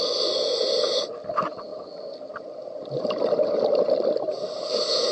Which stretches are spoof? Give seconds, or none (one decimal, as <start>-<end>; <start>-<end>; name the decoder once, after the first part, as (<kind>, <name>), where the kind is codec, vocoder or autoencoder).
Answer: none